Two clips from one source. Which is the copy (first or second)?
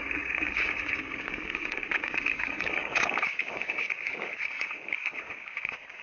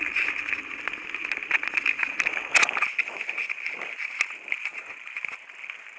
first